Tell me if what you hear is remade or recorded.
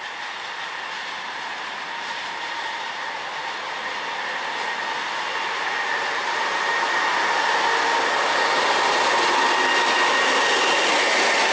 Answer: recorded